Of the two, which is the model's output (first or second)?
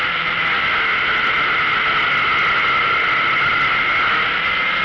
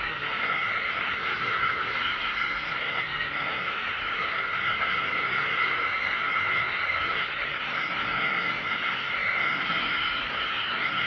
second